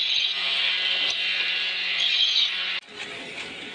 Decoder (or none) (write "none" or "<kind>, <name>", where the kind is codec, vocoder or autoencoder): none